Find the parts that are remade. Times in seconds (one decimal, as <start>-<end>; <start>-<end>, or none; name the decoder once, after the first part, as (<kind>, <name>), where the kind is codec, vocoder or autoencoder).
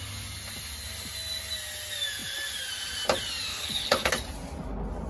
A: 3.5-4.1 (codec, HILCodec)